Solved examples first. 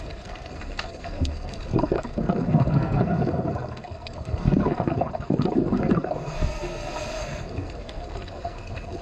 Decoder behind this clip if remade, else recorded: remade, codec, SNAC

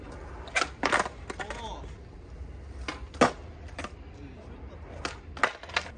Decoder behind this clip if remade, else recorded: recorded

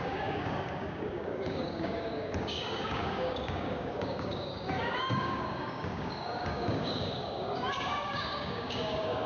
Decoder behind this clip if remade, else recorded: remade, codec, DAC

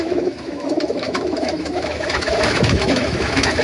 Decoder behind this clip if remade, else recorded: remade, autoencoder, DAC-VAE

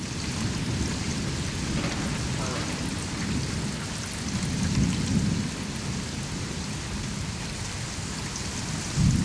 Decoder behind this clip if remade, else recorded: recorded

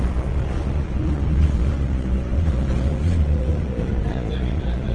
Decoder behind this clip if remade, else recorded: remade, vocoder, Vocos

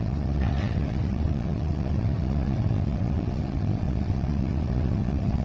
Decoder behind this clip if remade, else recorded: remade, vocoder, WaveNeXt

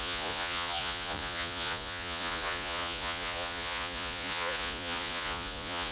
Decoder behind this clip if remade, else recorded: remade, vocoder, Vocos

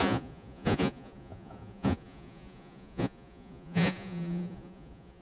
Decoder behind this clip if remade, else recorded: remade, vocoder, Vocos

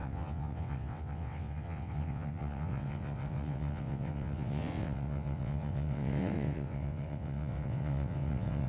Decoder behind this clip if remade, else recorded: remade, vocoder, WaveNeXt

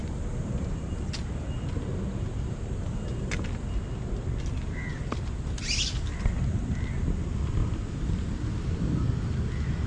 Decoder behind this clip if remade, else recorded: recorded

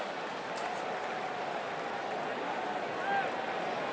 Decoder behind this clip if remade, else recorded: recorded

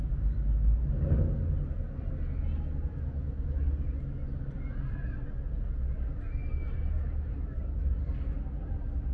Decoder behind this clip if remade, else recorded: recorded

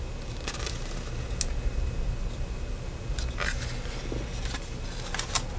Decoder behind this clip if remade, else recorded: recorded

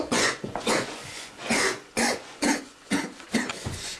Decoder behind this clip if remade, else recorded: remade, vocoder, Vocos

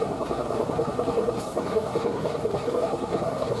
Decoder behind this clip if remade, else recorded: remade, codec, SNAC